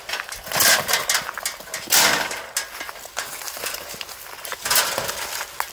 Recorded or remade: recorded